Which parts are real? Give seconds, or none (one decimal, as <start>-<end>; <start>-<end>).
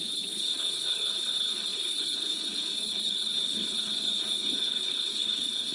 none